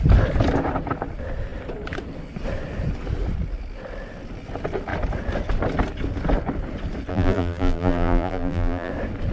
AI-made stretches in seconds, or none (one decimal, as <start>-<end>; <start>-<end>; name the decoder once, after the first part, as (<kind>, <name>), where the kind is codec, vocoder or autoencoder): 7.1-8.9 (vocoder, BigVGAN v2)